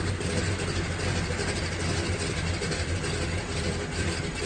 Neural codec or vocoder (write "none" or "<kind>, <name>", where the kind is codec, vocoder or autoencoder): none